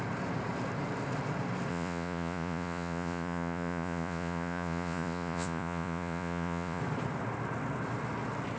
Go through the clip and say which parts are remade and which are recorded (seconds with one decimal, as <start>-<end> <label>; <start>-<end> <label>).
0.0-1.7 recorded; 1.7-6.8 remade; 6.8-8.6 recorded